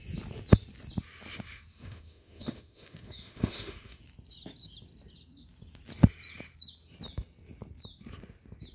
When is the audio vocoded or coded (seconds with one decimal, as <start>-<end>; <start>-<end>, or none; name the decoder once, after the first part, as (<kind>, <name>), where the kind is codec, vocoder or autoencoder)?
1.7-4.0 (autoencoder, DAC-VAE)